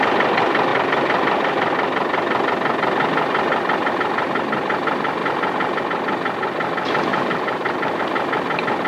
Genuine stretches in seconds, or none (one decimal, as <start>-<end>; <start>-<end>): 0.0-7.1; 8.0-8.9